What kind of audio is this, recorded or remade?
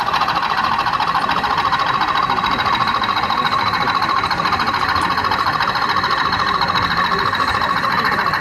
remade